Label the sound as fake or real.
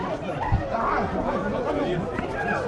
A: real